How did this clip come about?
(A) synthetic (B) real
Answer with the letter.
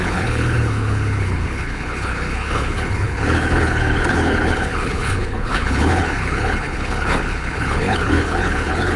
A